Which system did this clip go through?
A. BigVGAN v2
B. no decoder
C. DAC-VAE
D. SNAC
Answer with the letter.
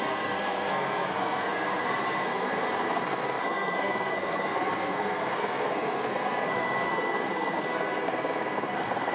D